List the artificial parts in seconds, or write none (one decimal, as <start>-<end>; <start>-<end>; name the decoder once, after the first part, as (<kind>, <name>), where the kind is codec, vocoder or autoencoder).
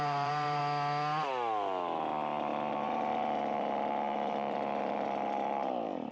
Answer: 0.0-0.6 (vocoder, BigVGAN v2); 2.7-6.1